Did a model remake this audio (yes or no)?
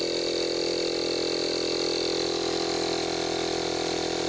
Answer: no